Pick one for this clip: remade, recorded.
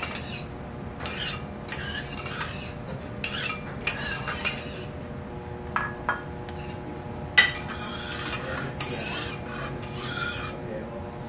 recorded